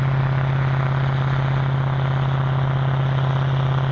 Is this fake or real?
real